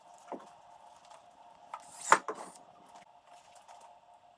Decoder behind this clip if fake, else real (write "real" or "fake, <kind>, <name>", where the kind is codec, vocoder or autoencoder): real